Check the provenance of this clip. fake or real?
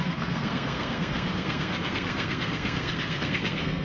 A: fake